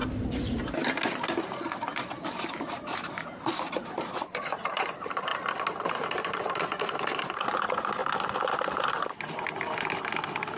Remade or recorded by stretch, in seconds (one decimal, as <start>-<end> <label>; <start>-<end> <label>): 0.0-2.1 recorded; 2.1-5.3 remade; 5.3-6.8 recorded; 6.8-8.0 remade; 8.0-10.6 recorded